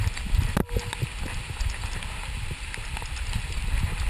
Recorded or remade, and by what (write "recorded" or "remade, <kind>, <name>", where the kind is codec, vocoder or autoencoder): recorded